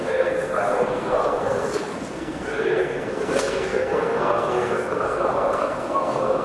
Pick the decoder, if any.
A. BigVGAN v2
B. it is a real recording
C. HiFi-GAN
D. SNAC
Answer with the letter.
D